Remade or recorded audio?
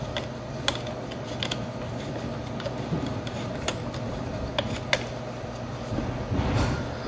recorded